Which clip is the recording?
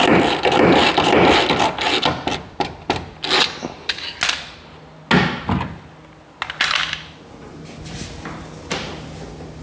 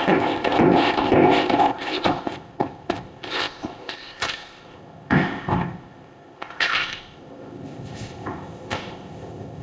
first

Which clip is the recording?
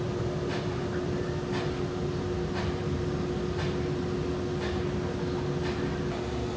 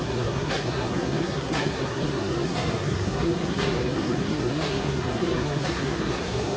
first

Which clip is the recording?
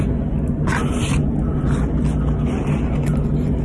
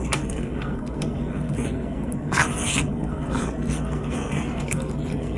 first